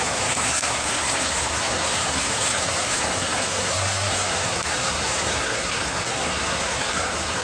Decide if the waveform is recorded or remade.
remade